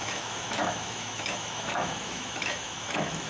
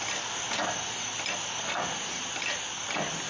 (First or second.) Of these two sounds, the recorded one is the second